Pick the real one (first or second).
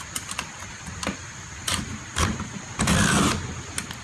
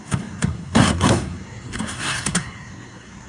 first